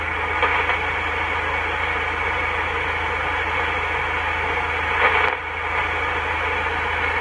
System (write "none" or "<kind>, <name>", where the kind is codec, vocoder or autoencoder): none